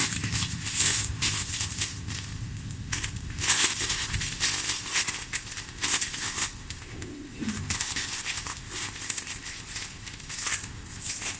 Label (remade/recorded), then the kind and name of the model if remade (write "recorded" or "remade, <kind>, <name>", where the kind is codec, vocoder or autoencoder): remade, codec, ZipCodec